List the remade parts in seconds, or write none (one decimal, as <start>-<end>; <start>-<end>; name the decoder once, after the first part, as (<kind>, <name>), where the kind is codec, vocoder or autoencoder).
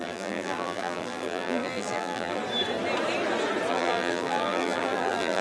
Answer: 0.0-2.4 (vocoder, BigVGAN v2); 3.7-5.4